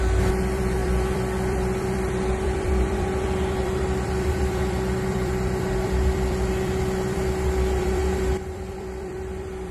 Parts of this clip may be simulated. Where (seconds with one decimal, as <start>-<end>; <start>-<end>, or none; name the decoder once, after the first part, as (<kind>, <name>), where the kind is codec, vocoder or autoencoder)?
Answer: 0.0-8.0 (vocoder, BigVGAN v2); 8.5-9.7